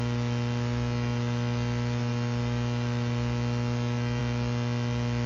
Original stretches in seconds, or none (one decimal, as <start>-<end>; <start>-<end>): none